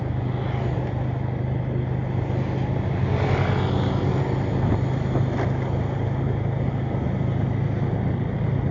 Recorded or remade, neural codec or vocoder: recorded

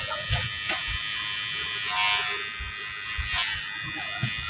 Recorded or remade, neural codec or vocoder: recorded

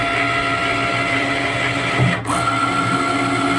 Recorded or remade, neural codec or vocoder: recorded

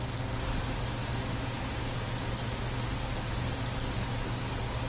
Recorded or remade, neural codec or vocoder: recorded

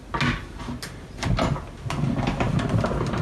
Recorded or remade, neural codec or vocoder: recorded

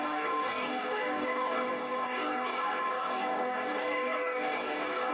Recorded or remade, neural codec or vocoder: remade, codec, DAC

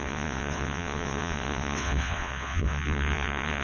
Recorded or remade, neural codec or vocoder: remade, vocoder, WaveNeXt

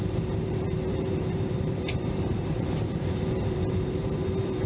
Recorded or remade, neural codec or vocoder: remade, vocoder, BigVGAN v2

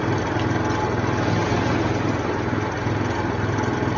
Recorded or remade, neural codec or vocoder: recorded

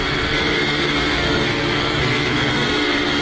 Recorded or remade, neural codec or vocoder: remade, codec, SNAC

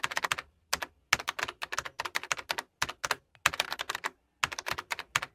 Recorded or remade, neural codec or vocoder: recorded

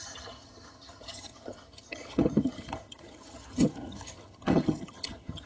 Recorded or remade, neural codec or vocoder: remade, vocoder, HiFi-GAN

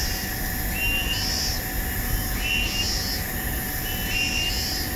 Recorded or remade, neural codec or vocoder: recorded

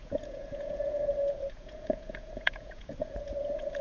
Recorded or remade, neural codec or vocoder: remade, vocoder, Vocos